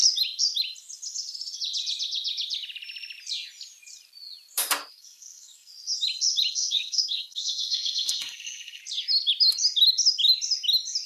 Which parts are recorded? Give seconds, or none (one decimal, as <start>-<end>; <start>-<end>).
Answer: 0.0-4.9; 5.7-6.5; 8.8-11.1